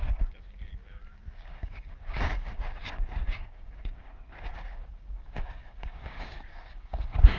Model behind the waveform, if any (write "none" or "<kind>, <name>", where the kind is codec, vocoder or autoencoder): codec, DAC